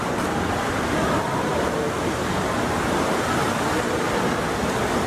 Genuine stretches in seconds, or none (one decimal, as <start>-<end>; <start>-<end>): 0.0-5.1